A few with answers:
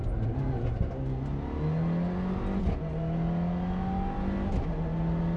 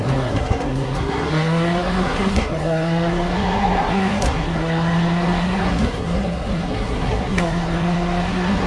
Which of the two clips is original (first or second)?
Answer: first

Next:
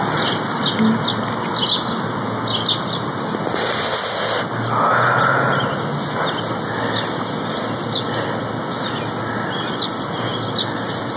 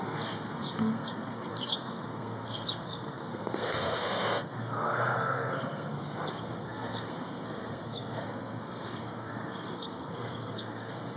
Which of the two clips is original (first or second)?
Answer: first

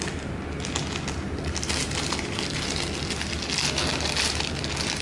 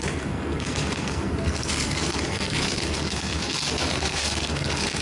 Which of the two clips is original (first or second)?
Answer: first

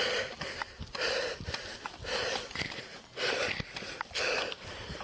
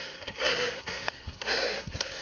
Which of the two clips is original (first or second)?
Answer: first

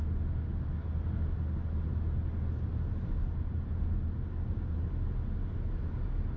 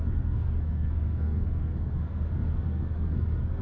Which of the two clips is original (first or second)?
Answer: first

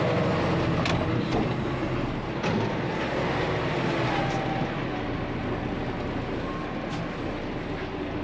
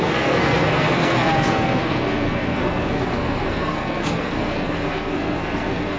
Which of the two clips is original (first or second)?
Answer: first